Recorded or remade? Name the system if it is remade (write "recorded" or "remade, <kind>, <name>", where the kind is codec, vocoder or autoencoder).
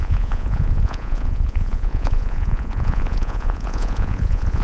remade, vocoder, Vocos